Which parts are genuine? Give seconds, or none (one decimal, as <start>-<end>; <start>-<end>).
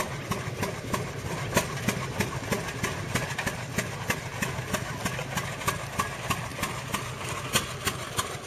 0.0-8.5